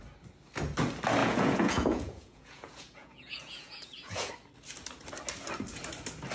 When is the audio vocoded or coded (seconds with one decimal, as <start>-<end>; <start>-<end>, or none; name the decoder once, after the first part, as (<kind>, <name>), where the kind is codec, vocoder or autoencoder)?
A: 1.2-4.3 (vocoder, Vocos)